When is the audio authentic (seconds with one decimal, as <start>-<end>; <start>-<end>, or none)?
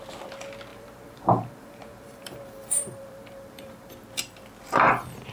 0.0-0.7; 3.9-5.3